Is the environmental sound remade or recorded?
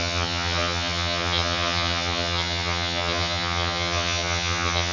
remade